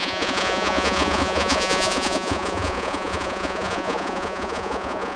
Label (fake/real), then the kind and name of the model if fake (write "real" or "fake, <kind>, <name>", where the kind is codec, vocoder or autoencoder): fake, vocoder, Vocos